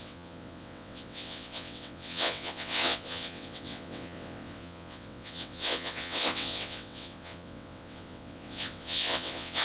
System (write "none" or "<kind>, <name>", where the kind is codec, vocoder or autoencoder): vocoder, WaveNeXt